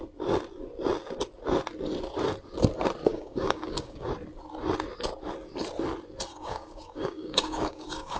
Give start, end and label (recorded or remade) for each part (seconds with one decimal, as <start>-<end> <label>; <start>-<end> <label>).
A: 0.0-3.1 recorded; 3.1-4.1 remade; 4.1-6.3 recorded; 6.3-8.2 remade